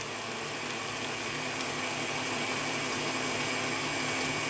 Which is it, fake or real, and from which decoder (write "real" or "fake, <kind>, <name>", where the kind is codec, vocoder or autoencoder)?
real